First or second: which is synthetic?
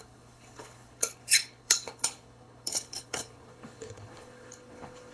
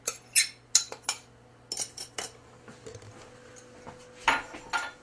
first